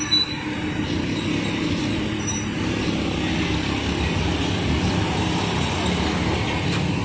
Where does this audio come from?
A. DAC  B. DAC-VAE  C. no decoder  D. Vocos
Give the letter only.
C